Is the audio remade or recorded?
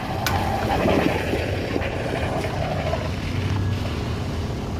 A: recorded